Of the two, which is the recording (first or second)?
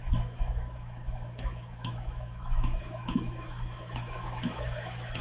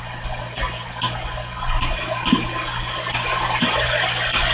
second